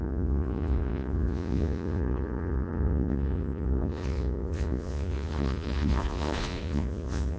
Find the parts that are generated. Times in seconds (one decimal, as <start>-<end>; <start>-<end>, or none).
0.0-7.4